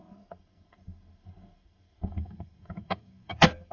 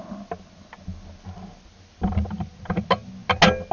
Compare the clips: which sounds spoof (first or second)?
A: first